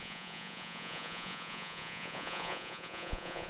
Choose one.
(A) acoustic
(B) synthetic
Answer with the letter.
B